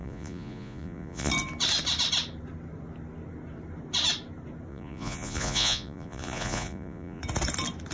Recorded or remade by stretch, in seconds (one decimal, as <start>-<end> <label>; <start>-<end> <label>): 0.0-1.3 remade; 1.3-4.7 recorded; 4.7-7.2 remade; 7.2-7.9 recorded